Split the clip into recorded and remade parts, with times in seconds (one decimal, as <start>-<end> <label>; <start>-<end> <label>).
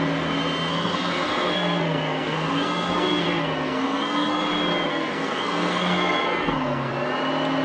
0.0-0.7 recorded; 0.7-4.4 remade; 4.4-4.9 recorded; 4.9-6.9 remade; 6.9-7.6 recorded